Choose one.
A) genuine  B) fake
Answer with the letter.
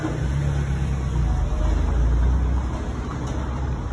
A